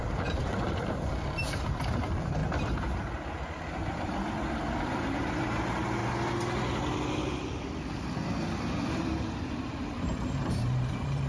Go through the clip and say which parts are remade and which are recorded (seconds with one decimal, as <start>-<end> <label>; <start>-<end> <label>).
0.0-2.4 remade; 2.4-4.8 recorded; 4.8-6.0 remade; 6.0-8.9 recorded; 8.9-11.3 remade